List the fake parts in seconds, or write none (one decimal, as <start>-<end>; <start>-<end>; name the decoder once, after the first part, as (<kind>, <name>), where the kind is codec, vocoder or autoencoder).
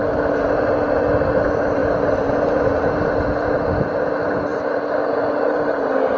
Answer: none